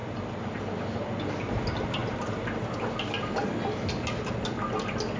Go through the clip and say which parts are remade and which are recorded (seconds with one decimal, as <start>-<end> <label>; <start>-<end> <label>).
0.0-0.6 remade; 0.6-5.2 recorded